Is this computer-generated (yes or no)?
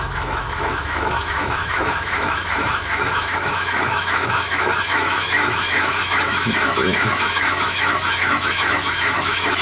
yes